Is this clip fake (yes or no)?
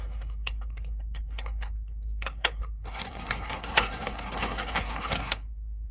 yes